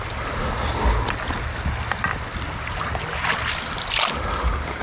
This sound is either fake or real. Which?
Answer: real